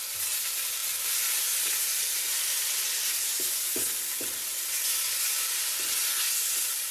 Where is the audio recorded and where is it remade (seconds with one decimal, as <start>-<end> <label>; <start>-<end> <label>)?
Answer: 0.0-6.9 recorded